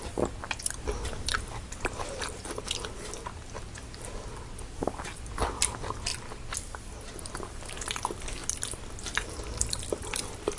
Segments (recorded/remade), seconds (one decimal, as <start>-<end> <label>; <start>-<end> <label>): 0.0-6.1 remade; 6.1-7.1 recorded; 7.1-8.4 remade; 8.4-9.9 recorded; 9.9-10.6 remade